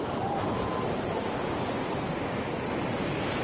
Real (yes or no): yes